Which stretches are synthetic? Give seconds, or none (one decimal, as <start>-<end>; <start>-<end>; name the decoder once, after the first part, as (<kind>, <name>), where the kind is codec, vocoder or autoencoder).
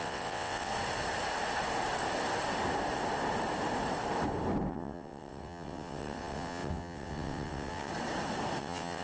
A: 0.0-0.7 (vocoder, WaveNeXt); 4.7-7.9; 8.6-9.0